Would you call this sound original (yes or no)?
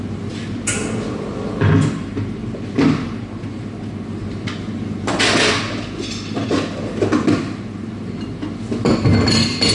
yes